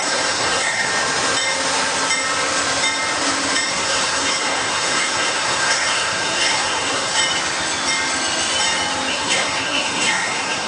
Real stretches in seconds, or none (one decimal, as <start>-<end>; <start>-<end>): 0.9-3.7; 7.2-9.1